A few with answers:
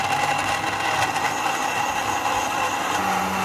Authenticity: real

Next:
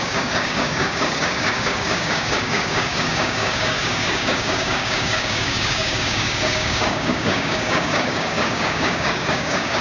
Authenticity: fake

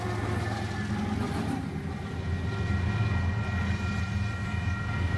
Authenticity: real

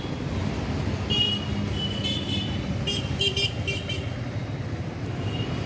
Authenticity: real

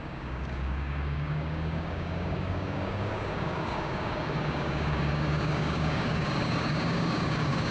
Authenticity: fake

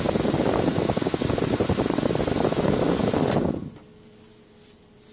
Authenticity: real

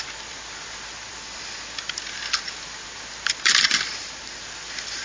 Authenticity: real